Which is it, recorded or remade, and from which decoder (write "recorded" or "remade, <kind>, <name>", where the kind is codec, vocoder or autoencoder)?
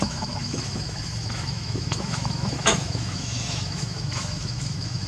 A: remade, autoencoder, DAC-VAE